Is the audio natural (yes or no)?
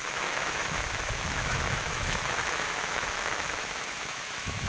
no